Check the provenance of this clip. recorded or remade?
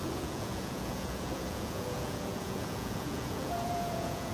remade